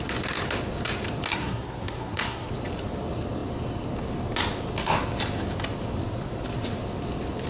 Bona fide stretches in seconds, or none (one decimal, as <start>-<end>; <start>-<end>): 0.0-1.3; 2.5-7.5